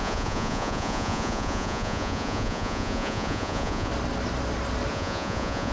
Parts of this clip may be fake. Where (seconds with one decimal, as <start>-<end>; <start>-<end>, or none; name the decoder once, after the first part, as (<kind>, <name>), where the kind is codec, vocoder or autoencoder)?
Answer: 0.0-3.9 (vocoder, Vocos); 4.9-5.7